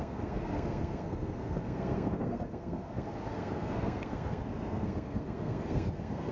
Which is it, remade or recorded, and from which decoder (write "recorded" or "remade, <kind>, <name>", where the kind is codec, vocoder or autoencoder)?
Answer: remade, codec, SNAC